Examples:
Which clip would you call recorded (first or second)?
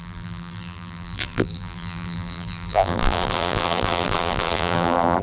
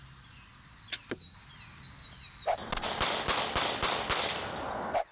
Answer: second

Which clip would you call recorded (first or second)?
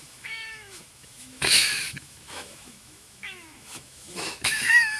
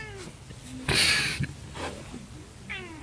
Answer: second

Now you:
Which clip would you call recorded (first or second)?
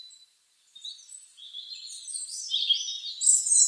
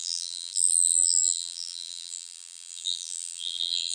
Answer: first